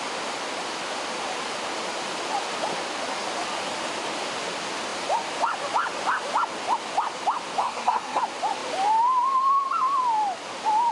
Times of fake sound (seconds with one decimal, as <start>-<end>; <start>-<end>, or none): 7.6-8.2